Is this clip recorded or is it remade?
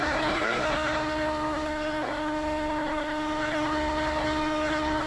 remade